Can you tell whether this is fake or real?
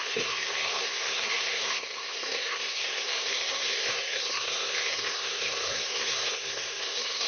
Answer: fake